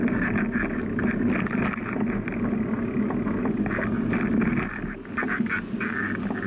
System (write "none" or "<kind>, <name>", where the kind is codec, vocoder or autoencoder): none